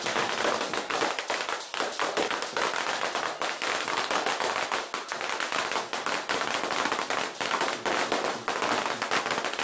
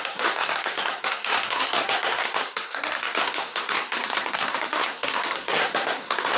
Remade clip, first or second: second